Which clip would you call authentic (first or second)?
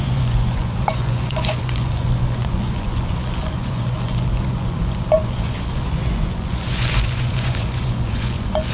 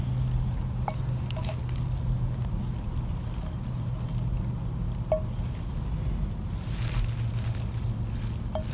second